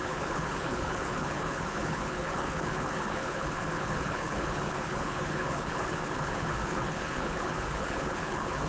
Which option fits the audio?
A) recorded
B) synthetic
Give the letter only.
B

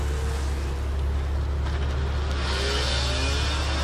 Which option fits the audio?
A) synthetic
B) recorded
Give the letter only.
B